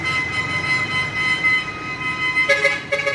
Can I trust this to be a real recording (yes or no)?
no